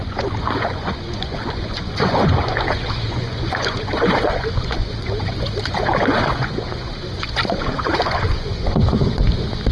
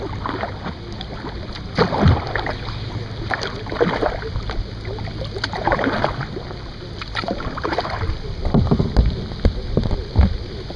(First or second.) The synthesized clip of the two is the first